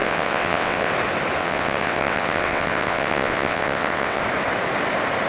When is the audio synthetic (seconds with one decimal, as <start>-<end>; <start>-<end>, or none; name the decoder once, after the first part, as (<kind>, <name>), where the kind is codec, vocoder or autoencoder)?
0.0-0.9 (vocoder, WaveNeXt); 1.4-4.2